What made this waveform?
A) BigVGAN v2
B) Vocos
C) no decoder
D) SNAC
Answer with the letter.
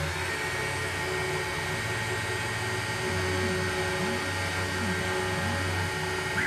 C